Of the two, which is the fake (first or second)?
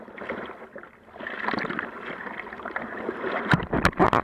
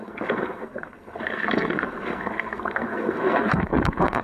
second